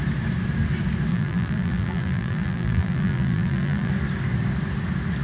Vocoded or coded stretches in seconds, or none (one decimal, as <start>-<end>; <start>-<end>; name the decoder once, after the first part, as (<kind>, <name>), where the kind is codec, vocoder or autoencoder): 1.1-3.9 (vocoder, BigVGAN v2)